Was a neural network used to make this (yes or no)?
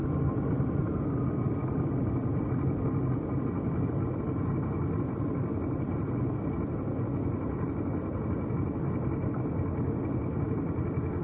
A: no